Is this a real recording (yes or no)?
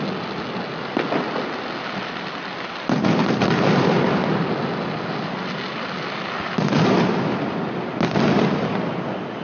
yes